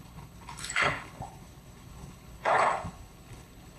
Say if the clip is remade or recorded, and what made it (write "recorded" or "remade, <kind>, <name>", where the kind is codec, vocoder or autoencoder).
remade, codec, HILCodec